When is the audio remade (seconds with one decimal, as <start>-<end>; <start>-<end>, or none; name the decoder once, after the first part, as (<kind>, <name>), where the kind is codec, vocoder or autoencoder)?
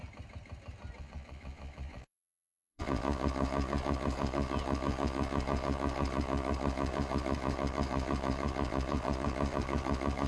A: 1.0-10.3 (vocoder, Vocos)